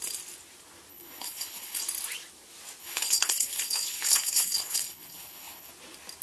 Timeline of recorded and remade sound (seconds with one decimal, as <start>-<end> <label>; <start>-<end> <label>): 0.0-0.9 recorded; 0.9-1.8 remade; 1.8-2.8 recorded; 2.8-5.7 remade; 5.7-6.2 recorded